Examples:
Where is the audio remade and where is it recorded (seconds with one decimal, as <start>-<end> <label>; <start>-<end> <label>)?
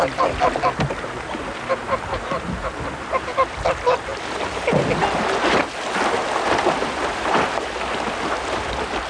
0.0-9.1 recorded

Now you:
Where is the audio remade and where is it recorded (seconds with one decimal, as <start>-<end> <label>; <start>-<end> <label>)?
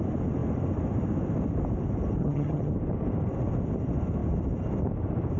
0.0-2.2 recorded; 2.2-2.7 remade; 2.7-5.4 recorded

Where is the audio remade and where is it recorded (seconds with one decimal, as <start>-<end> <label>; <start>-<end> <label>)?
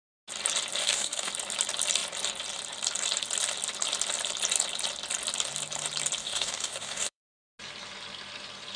0.0-0.8 recorded; 0.8-1.3 remade; 1.3-6.2 recorded; 6.2-7.3 remade; 7.3-8.8 recorded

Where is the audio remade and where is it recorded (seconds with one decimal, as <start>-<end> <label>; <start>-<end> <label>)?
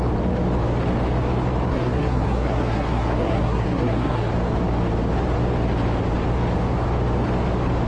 0.0-1.7 recorded; 1.7-4.3 remade; 4.3-7.9 recorded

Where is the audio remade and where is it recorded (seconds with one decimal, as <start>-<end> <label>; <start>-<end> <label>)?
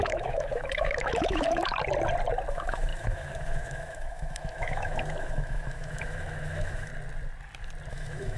0.0-1.7 remade; 1.7-2.5 recorded; 2.5-6.9 remade; 6.9-7.9 recorded; 7.9-8.4 remade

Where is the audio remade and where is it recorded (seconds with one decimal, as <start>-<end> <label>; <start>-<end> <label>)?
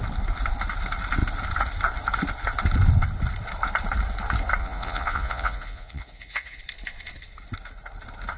0.0-4.6 recorded; 4.6-6.6 remade; 6.6-8.4 recorded